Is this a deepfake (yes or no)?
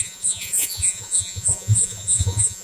yes